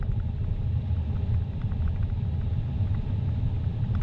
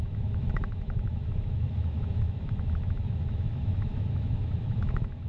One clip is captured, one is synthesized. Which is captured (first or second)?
first